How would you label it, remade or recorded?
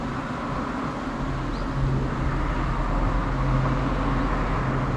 recorded